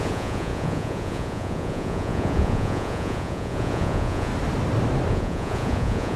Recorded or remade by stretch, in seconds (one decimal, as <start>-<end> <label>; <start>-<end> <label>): 0.0-4.3 remade; 4.3-5.1 recorded; 5.1-6.2 remade